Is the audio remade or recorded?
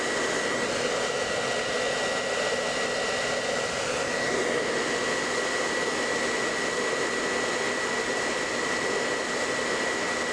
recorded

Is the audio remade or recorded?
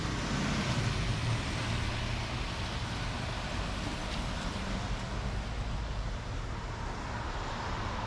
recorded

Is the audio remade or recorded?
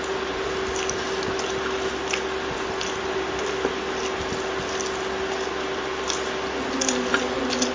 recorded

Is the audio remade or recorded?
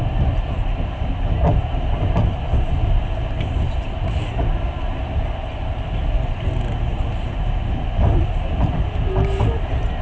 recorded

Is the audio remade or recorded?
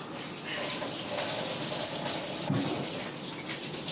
recorded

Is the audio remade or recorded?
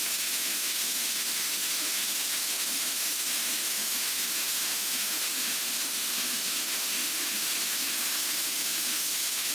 remade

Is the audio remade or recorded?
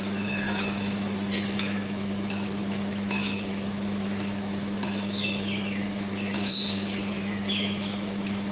remade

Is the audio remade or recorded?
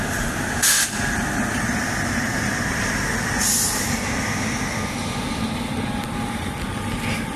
recorded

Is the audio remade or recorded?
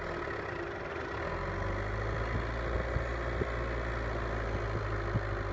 recorded